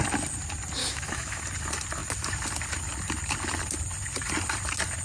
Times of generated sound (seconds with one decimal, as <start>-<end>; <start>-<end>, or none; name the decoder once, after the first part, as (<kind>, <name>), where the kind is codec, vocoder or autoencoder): 0.8-1.4 (autoencoder, DAC-VAE)